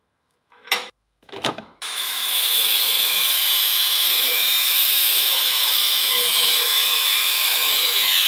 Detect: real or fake fake